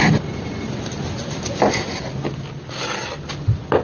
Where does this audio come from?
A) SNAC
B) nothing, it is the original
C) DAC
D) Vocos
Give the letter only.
B